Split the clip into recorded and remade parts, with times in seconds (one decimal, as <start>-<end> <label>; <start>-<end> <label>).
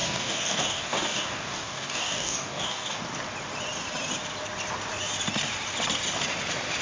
0.0-3.0 remade; 3.0-6.8 recorded